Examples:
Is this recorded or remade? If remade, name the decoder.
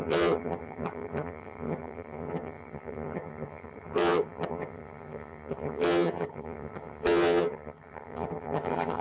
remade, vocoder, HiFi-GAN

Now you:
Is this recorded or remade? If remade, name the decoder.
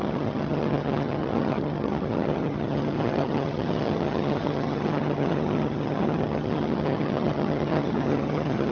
remade, vocoder, HiFi-GAN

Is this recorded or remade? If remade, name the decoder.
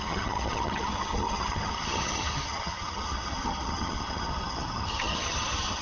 remade, vocoder, HiFi-GAN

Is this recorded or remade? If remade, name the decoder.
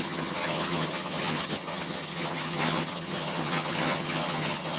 remade, vocoder, HiFi-GAN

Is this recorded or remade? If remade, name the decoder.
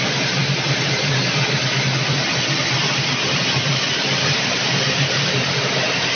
recorded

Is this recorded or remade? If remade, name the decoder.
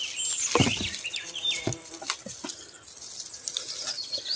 recorded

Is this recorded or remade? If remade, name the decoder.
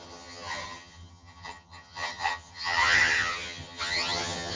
remade, vocoder, HiFi-GAN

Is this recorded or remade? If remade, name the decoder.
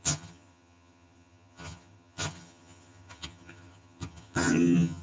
remade, vocoder, HiFi-GAN